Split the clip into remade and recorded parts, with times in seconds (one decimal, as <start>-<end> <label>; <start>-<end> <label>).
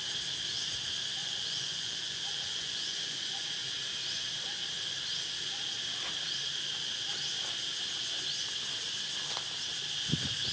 0.0-1.2 recorded; 1.2-3.5 remade; 3.5-10.5 recorded